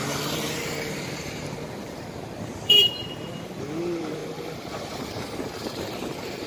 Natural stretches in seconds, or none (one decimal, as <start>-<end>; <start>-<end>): none